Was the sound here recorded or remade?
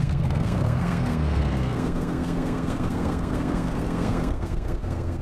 remade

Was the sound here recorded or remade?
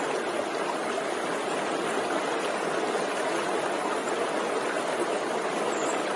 recorded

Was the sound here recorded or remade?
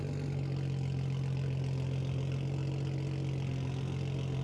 recorded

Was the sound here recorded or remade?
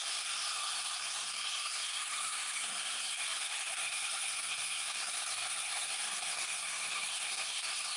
remade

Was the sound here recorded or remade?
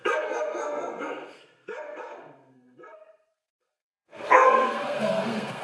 remade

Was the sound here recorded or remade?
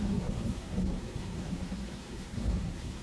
remade